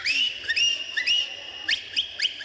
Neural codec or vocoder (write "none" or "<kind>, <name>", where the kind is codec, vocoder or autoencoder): vocoder, BigVGAN v2